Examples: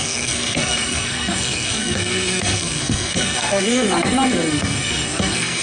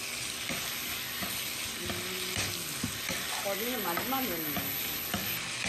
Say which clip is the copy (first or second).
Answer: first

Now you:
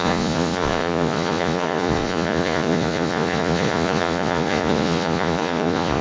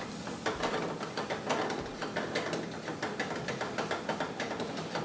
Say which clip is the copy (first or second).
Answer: first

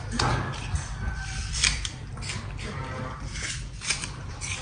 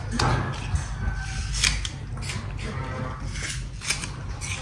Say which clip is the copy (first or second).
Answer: first